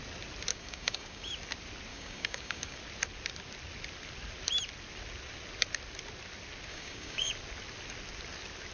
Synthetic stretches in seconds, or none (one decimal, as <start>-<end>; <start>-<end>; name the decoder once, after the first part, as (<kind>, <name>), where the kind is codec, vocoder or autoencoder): 0.5-1.3 (codec, DAC); 1.9-2.8; 6.7-7.3